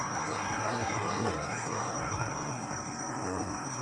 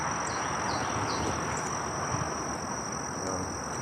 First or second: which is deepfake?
first